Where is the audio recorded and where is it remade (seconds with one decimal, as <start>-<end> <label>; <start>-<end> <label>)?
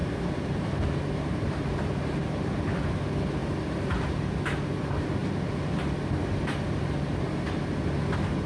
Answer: 0.0-3.0 remade; 3.0-3.4 recorded; 3.4-4.2 remade; 4.2-8.5 recorded